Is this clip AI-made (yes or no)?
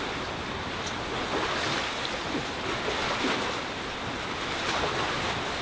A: yes